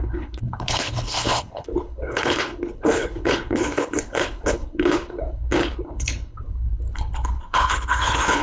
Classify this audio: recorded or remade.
remade